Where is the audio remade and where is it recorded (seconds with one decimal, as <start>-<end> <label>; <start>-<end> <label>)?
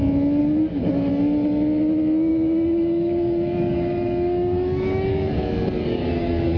0.0-0.4 recorded; 0.4-1.1 remade; 1.1-2.3 recorded; 2.3-6.6 remade